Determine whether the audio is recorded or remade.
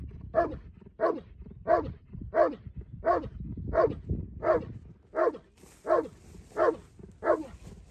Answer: recorded